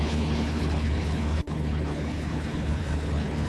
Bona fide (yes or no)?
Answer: no